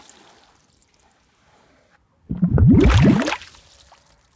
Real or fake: real